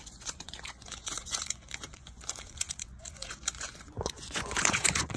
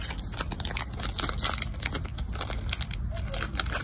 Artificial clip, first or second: first